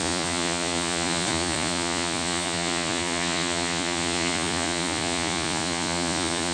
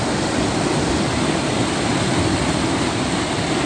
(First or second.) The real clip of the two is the second